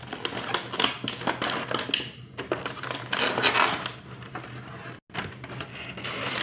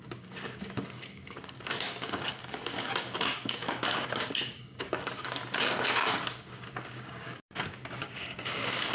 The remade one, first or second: second